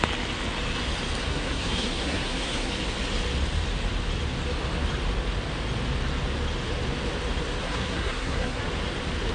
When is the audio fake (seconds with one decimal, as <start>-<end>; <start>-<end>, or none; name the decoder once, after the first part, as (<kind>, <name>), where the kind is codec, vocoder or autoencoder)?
1.2-2.7 (codec, SNAC); 7.6-8.6